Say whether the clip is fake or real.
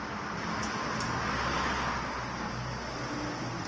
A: real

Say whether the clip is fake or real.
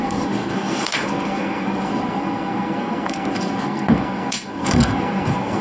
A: fake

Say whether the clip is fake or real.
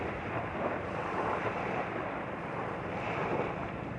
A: real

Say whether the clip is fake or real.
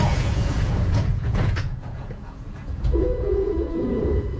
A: fake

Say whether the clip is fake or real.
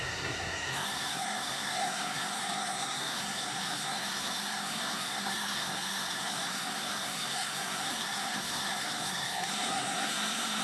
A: fake